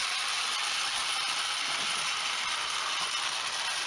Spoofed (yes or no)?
no